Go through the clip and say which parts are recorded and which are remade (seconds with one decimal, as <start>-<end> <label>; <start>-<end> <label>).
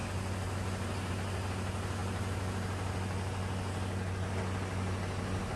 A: 0.0-5.6 recorded